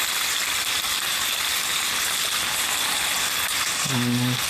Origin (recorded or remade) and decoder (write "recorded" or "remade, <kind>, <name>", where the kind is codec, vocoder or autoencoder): recorded